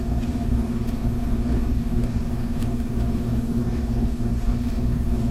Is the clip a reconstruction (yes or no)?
yes